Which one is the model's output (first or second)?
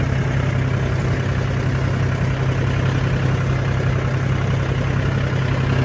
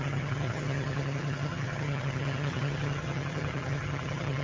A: second